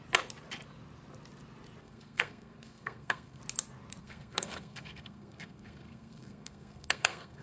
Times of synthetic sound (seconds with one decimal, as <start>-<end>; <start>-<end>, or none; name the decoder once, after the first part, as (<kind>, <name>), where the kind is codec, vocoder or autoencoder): 1.8-3.4 (codec, SNAC); 4.0-7.4